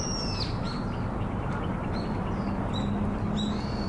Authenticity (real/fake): real